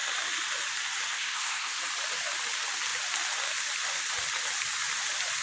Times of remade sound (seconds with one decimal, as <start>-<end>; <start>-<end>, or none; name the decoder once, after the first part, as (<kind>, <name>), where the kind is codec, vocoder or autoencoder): 1.1-1.8 (codec, ZipCodec)